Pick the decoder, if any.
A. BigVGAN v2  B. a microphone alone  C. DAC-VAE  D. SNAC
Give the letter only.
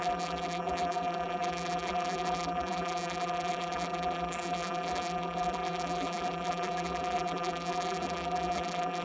A